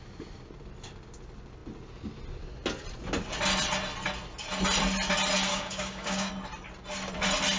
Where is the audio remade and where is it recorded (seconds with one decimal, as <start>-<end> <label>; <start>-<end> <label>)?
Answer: 0.0-5.5 recorded; 5.5-6.3 remade; 6.3-7.6 recorded